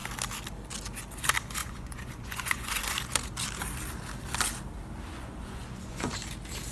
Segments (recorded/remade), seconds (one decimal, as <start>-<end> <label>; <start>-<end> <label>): 0.0-1.6 recorded; 1.6-2.8 remade; 2.8-5.1 recorded; 5.1-6.1 remade; 6.1-6.7 recorded